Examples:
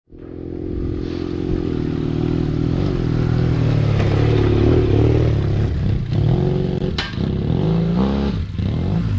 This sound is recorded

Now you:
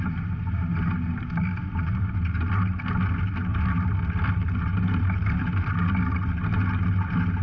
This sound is recorded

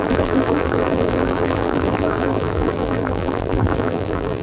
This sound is remade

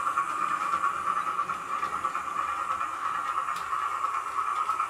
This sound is recorded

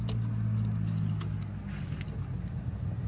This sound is recorded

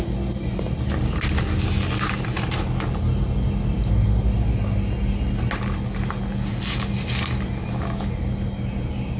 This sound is recorded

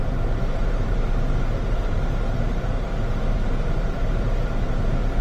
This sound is remade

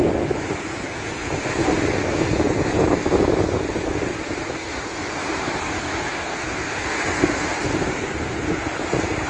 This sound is remade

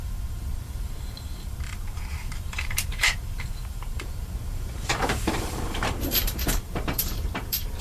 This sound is remade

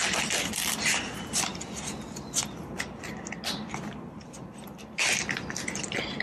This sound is recorded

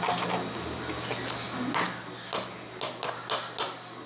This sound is recorded